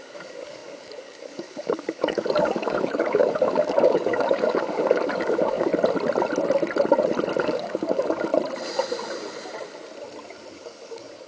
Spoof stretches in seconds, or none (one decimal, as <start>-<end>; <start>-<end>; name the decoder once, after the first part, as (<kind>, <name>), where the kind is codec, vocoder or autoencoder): 0.0-5.7 (codec, DAC); 7.4-8.3; 10.5-11.3